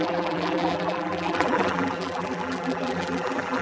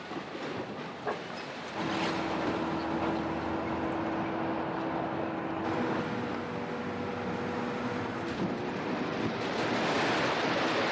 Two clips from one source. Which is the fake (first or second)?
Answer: first